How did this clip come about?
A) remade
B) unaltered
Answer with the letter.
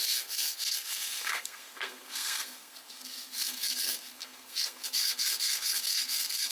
A